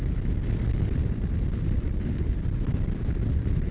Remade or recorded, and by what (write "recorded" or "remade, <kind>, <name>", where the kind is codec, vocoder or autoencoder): recorded